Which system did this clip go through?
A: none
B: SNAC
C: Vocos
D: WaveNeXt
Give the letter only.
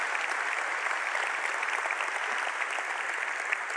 A